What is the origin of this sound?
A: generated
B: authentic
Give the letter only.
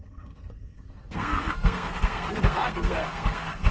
A